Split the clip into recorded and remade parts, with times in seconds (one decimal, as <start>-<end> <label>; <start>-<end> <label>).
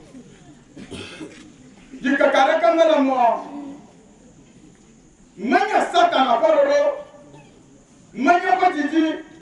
0.0-0.7 remade; 0.7-1.4 recorded; 1.4-2.1 remade; 2.1-4.6 recorded; 4.6-9.4 remade